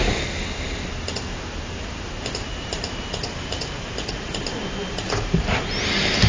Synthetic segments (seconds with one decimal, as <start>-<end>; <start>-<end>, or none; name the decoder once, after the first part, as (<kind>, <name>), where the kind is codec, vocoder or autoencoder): 1.3-4.1 (vocoder, BigVGAN v2)